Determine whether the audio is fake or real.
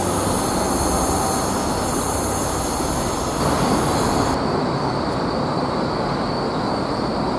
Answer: real